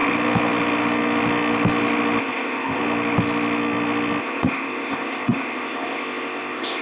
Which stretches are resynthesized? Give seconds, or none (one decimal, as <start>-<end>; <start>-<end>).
2.2-2.8; 4.2-6.8